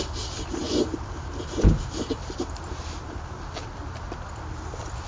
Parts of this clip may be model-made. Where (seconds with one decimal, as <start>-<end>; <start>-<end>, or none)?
none